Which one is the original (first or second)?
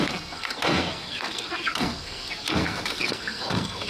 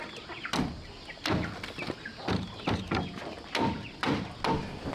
second